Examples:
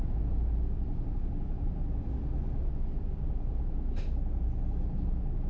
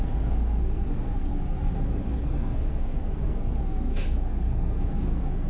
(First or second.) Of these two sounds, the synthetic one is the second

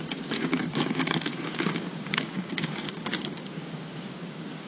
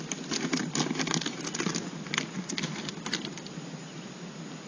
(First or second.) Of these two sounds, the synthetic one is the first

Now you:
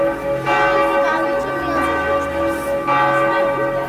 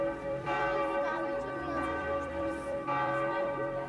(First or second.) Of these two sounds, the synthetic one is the second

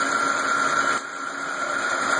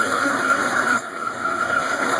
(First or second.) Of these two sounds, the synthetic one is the second